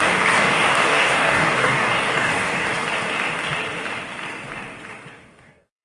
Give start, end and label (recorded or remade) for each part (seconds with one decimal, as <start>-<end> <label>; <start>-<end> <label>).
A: 0.0-2.7 remade; 2.7-5.1 recorded; 5.1-5.8 remade